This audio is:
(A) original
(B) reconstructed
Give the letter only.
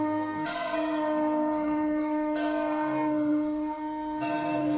B